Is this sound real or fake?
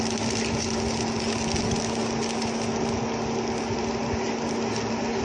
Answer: real